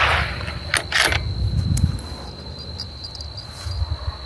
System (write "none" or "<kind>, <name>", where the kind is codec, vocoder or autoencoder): none